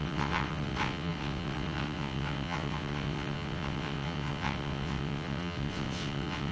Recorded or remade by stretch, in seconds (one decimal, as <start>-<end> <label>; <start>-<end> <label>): 0.0-6.5 remade